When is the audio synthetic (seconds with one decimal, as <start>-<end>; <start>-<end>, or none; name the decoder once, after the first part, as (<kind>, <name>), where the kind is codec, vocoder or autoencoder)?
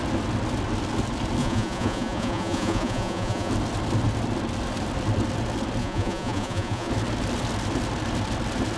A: 1.4-3.5 (vocoder, Vocos); 5.8-6.9